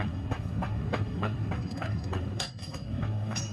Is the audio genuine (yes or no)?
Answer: no